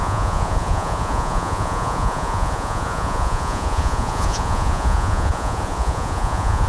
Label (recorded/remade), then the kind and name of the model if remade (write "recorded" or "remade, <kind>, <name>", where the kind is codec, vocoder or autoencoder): remade, vocoder, Vocos